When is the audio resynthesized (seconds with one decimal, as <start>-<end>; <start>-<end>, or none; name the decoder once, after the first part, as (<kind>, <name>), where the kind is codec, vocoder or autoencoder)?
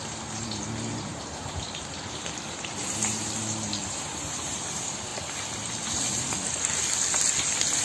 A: 0.0-5.1 (vocoder, BigVGAN v2)